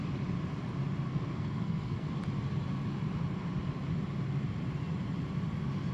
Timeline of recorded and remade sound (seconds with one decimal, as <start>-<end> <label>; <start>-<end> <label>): 0.0-1.1 recorded; 1.1-2.1 remade; 2.1-5.9 recorded